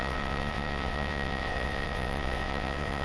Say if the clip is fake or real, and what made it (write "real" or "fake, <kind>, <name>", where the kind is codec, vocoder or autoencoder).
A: fake, vocoder, WaveNeXt